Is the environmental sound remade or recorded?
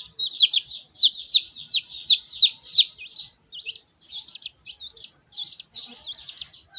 recorded